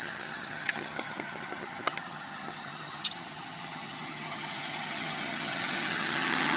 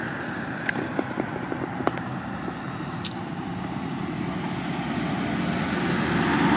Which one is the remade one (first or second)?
first